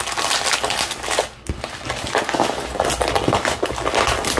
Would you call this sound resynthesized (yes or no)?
no